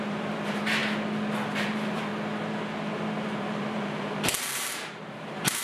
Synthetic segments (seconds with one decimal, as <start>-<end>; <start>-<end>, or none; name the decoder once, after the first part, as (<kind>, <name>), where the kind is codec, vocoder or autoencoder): 0.0-0.8 (vocoder, BigVGAN v2); 1.5-2.1; 3.4-5.6